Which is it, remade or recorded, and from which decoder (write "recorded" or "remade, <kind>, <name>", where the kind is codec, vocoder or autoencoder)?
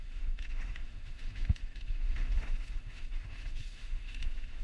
remade, autoencoder, DAC-VAE